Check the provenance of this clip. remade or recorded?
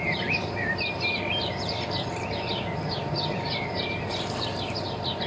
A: remade